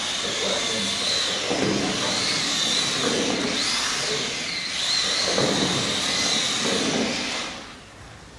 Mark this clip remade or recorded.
recorded